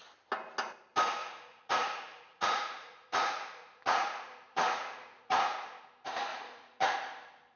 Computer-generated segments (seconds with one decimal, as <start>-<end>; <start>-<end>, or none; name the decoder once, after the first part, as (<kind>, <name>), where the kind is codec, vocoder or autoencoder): 1.2-5.8 (vocoder, Vocos); 6.3-6.9